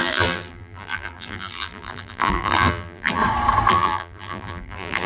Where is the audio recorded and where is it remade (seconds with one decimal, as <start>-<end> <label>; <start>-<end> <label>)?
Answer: 0.0-3.2 remade; 3.2-3.7 recorded; 3.7-5.1 remade

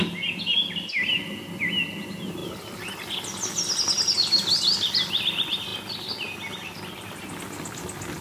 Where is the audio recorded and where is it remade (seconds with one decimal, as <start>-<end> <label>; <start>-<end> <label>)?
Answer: 0.0-8.2 recorded

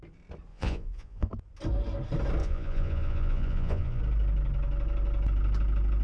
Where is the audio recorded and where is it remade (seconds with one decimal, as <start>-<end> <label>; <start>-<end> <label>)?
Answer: 0.0-0.5 recorded; 0.5-1.3 remade; 1.3-2.4 recorded; 2.4-4.0 remade; 4.0-6.0 recorded